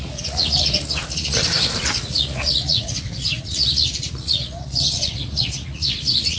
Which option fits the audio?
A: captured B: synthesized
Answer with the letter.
B